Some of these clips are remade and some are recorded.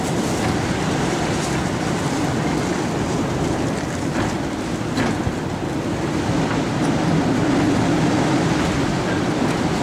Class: recorded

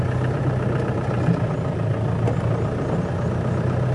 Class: recorded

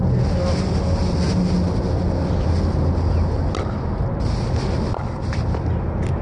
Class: recorded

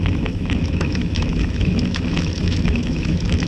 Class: remade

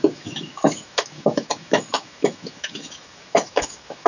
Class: remade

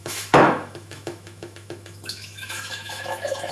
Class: remade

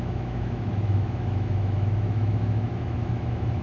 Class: remade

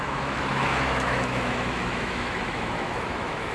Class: remade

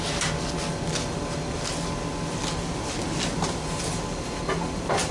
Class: recorded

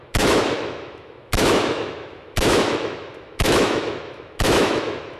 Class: remade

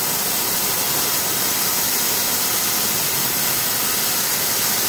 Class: recorded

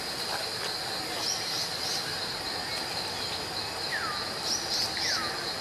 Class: recorded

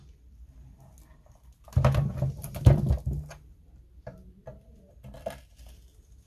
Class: recorded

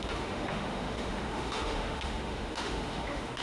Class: remade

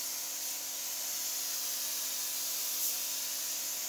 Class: recorded